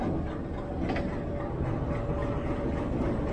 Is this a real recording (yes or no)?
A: yes